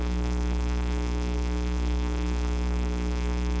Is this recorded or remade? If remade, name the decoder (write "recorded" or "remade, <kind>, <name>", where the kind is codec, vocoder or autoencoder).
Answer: remade, codec, SNAC